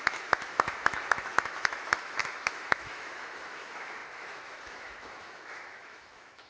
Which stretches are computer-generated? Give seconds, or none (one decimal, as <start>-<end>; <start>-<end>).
0.0-6.5

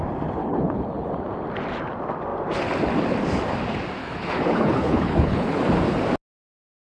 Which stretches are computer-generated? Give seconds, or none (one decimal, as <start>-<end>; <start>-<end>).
0.4-1.1; 4.0-5.6

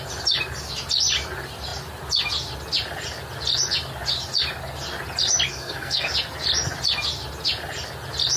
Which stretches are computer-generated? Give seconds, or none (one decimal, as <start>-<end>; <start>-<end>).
5.5-6.1

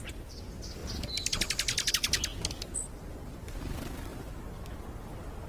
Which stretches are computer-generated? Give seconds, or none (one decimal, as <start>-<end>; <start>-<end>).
none

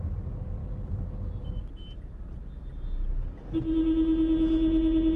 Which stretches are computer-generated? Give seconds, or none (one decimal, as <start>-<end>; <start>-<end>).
none